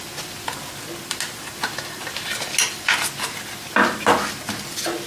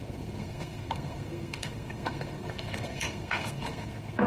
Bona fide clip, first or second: first